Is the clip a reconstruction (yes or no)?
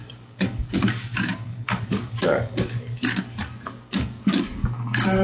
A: yes